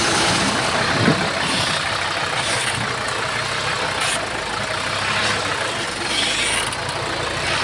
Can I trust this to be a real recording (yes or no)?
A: yes